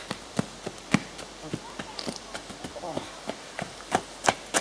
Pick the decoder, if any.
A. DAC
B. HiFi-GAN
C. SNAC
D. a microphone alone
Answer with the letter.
D